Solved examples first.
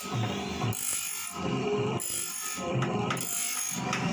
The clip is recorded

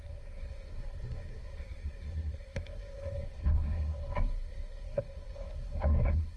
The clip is remade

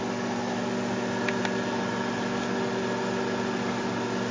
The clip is recorded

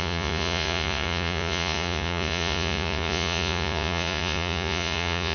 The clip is remade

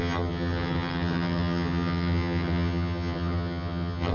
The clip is remade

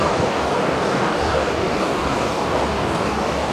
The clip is remade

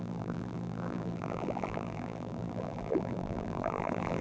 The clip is remade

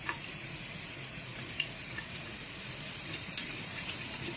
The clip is remade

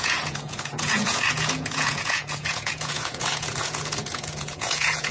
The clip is remade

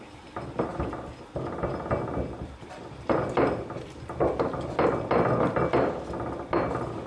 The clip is recorded